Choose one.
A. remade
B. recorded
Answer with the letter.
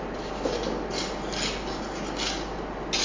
B